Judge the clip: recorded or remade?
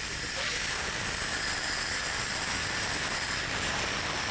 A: recorded